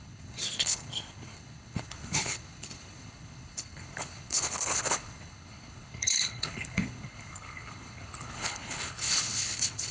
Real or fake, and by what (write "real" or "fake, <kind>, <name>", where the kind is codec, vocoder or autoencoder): fake, codec, HILCodec